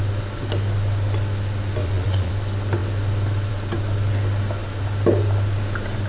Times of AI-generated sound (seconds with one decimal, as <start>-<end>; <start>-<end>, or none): 1.8-2.3